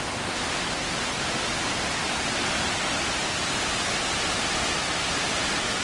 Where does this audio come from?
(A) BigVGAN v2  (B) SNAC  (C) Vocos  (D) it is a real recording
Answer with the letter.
D